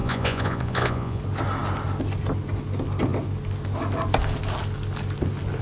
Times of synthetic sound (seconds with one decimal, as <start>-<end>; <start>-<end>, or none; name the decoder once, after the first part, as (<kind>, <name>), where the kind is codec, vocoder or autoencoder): 0.0-1.2 (vocoder, Vocos)

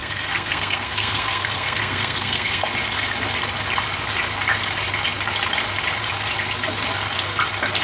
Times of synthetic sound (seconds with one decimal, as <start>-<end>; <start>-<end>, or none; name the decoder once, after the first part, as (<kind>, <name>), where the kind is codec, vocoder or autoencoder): 0.0-2.7 (codec, SNAC)

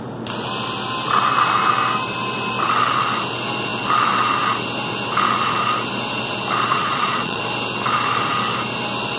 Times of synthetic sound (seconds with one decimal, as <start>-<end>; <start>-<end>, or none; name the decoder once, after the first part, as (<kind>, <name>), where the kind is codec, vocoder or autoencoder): 6.7-7.4 (vocoder, Vocos)

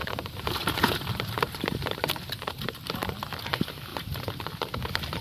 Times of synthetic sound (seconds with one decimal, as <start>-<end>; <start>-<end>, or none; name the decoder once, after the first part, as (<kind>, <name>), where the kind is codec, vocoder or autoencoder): 0.0-3.1 (vocoder, BigVGAN v2); 3.9-4.5

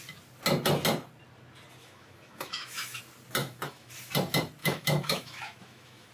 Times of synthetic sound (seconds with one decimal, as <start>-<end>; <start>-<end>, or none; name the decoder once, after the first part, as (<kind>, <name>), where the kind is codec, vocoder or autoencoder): 1.8-3.0 (autoencoder, DAC-VAE); 3.4-3.9; 4.6-6.1